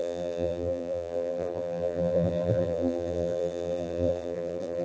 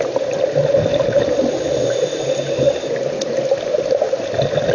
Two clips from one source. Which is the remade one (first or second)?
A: first